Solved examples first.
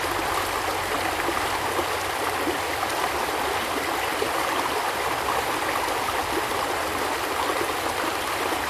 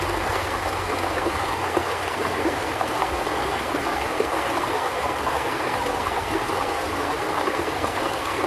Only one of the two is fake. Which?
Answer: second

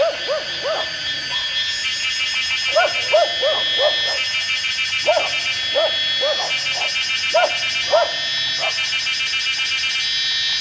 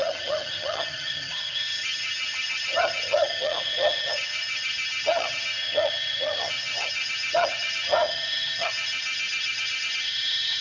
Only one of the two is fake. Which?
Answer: second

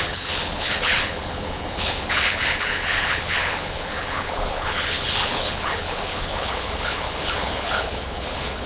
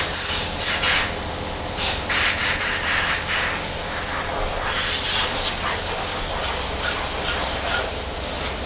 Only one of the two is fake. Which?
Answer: first